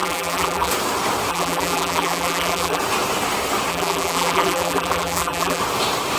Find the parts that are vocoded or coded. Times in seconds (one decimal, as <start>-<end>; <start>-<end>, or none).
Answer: 0.0-0.7; 1.3-2.8; 3.7-5.6